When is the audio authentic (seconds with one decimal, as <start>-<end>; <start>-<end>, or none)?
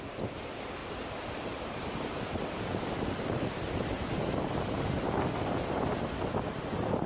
0.0-0.8; 5.1-7.1